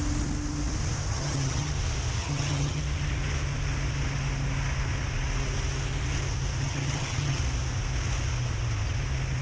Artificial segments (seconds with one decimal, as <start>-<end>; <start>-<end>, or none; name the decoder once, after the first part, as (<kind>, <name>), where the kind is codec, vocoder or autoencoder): 1.1-1.7 (vocoder, HiFi-GAN); 2.2-2.8; 6.6-7.4